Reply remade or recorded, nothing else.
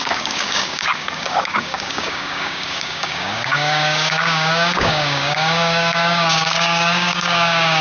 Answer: remade